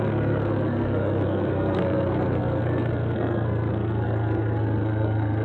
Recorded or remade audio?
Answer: remade